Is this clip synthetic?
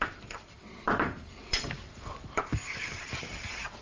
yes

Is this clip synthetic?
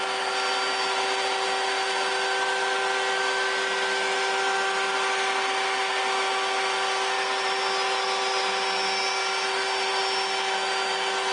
no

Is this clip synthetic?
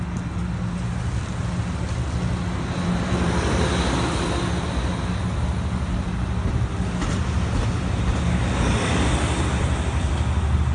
no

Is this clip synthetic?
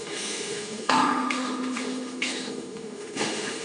yes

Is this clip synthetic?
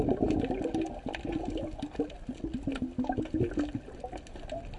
no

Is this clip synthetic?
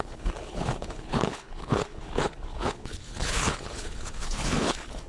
yes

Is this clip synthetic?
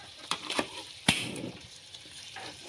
yes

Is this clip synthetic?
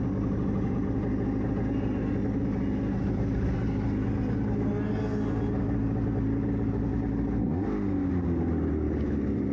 no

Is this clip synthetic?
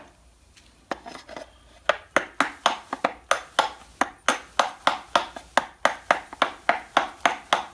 no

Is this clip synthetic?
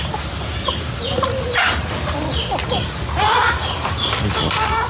no